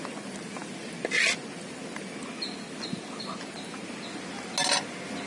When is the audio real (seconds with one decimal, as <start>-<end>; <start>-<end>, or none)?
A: 0.0-5.3